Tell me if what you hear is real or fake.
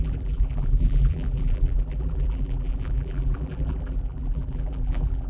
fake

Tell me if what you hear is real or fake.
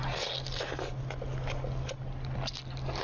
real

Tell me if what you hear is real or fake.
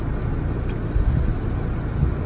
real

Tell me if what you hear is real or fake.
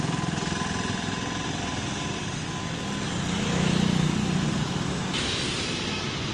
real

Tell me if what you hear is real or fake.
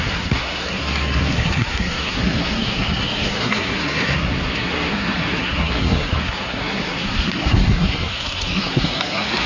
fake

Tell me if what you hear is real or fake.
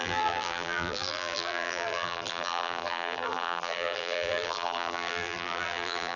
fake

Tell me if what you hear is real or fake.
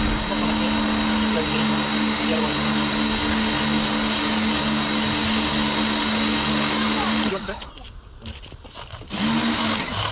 real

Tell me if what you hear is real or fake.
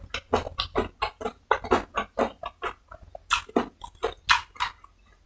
real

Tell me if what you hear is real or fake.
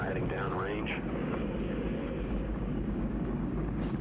fake